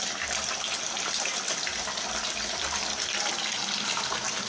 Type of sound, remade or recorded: recorded